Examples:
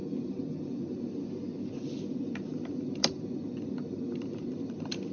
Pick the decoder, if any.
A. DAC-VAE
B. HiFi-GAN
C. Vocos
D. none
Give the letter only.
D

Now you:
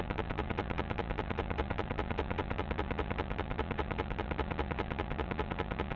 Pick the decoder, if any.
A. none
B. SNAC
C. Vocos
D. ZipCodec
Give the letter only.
C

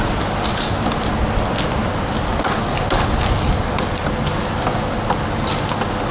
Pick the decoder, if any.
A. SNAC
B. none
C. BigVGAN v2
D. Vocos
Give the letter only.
B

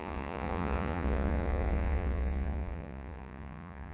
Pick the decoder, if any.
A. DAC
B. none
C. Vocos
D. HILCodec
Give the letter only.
C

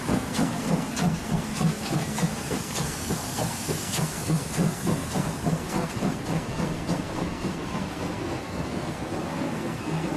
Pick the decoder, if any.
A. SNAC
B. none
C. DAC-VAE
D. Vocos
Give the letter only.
A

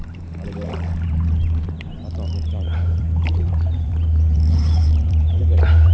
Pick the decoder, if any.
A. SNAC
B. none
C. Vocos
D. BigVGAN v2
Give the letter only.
D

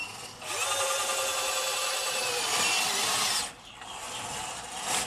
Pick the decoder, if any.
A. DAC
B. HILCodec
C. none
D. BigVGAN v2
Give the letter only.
C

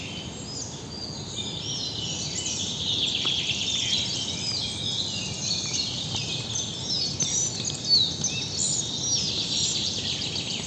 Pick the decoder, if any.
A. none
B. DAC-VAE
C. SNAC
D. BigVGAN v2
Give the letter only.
A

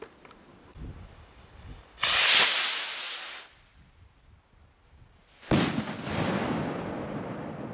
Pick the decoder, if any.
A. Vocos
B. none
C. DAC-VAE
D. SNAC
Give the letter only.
B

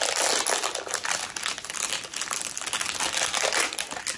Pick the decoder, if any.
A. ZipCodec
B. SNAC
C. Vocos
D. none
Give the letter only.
D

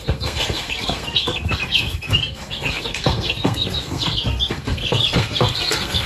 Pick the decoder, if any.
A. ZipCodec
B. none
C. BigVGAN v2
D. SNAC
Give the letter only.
D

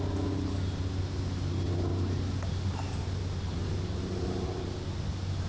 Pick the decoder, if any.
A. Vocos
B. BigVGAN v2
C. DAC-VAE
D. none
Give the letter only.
D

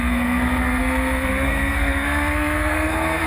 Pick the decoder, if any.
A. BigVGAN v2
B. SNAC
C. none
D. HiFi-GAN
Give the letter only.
B